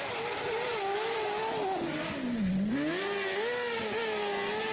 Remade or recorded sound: recorded